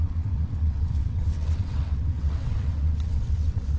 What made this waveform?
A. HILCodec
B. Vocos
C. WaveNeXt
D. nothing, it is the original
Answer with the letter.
C